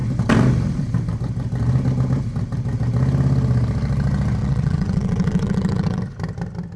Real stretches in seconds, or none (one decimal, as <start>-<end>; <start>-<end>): 0.0-4.4; 6.0-6.8